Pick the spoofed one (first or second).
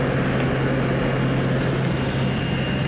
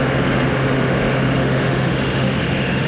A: second